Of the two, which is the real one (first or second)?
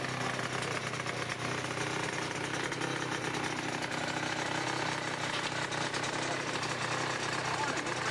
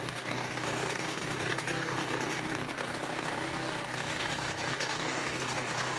first